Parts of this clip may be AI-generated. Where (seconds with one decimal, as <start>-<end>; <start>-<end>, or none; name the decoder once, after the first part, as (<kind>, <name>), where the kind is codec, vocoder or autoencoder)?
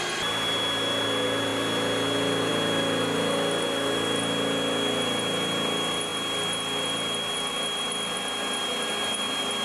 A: none